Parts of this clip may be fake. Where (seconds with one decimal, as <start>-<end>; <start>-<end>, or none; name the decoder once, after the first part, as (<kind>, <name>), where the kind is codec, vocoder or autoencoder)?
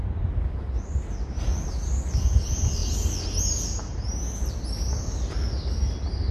none